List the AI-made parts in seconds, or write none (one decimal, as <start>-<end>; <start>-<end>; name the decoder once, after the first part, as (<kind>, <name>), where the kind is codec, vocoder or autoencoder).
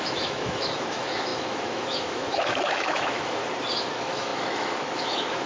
0.0-3.4 (autoencoder, DAC-VAE); 3.9-5.5